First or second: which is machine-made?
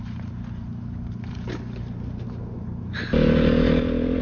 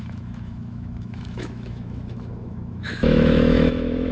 second